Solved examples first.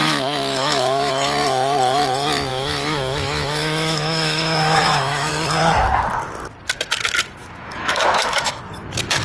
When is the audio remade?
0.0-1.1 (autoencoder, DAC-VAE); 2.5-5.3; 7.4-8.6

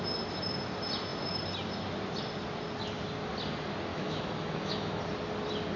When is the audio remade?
3.9-5.0 (autoencoder, DAC-VAE)

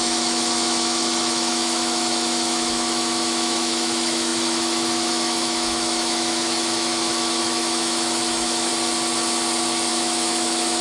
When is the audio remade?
0.0-8.7 (autoencoder, DAC-VAE); 9.9-10.8

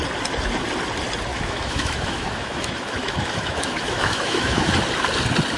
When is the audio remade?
1.3-4.7 (autoencoder, DAC-VAE)